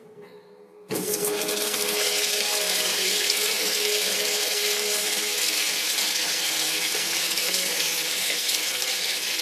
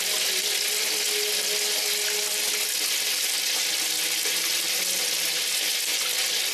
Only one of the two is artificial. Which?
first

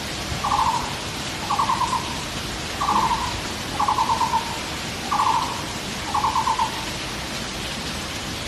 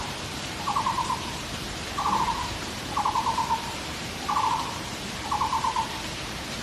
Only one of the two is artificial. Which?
second